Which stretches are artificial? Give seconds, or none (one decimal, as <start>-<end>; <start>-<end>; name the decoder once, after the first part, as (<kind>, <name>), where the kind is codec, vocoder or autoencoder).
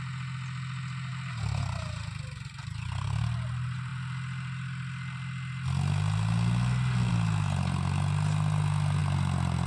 none